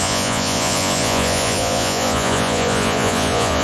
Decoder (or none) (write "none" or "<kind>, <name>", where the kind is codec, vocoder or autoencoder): vocoder, Vocos